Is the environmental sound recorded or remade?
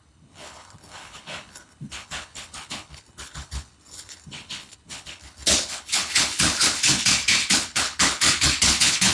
remade